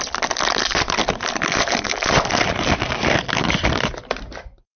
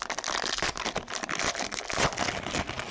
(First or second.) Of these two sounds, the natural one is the second